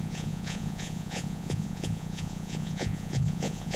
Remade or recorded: remade